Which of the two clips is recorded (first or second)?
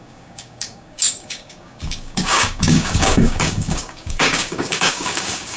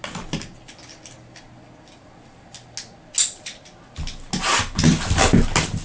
second